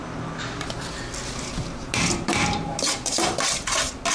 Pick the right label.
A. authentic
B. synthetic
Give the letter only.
A